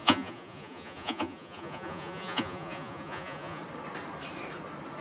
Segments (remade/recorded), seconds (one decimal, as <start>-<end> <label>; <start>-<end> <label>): 0.0-3.6 remade; 3.6-5.0 recorded